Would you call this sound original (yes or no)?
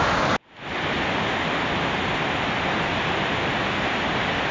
yes